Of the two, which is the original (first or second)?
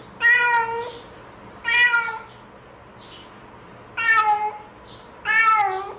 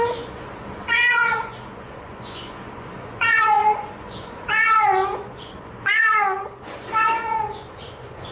first